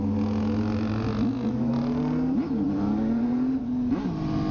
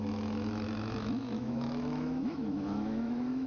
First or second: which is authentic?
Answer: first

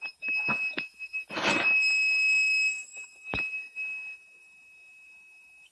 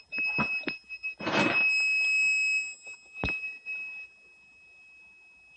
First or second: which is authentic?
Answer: second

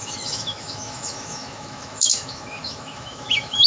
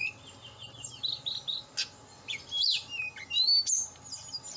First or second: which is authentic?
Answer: second